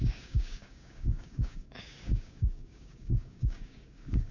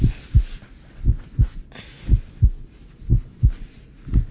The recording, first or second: second